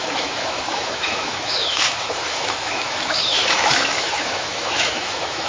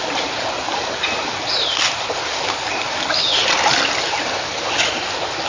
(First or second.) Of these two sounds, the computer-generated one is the first